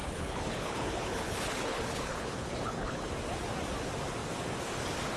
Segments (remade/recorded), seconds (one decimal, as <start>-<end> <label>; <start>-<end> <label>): 0.0-3.1 remade; 3.1-5.2 recorded